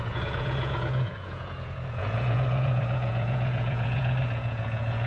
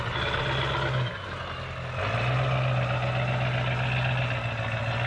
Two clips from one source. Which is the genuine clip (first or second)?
second